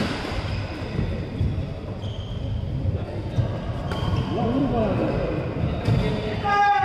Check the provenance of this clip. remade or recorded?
recorded